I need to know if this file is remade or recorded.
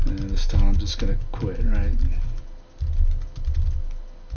recorded